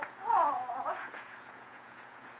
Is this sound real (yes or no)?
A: no